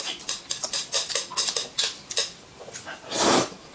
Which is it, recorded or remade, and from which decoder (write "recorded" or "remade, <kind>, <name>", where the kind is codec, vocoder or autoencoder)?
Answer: recorded